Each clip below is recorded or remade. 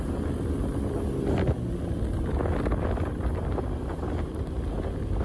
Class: recorded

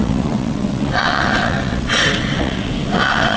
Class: remade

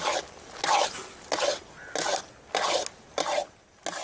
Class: recorded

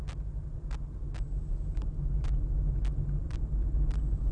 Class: recorded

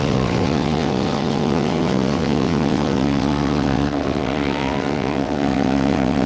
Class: remade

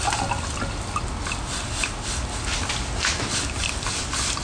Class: recorded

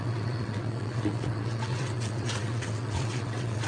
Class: remade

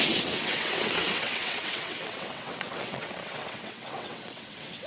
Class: remade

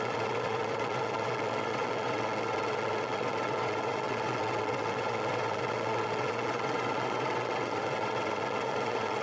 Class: remade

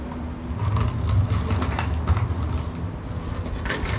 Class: recorded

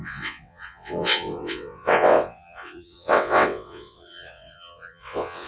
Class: remade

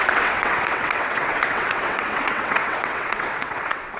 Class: remade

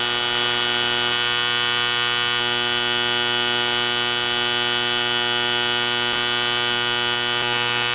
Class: recorded